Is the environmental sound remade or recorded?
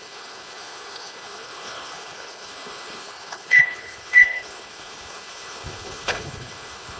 remade